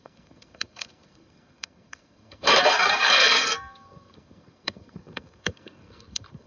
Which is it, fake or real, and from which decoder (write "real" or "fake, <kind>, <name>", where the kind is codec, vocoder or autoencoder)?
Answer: fake, codec, SNAC